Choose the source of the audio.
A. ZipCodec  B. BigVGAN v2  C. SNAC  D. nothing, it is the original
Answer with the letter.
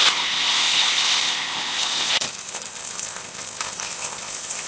A